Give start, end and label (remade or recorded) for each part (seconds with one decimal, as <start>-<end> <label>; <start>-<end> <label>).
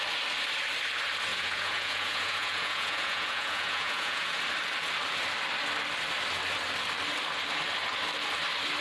0.0-1.3 recorded; 1.3-4.4 remade; 4.4-8.8 recorded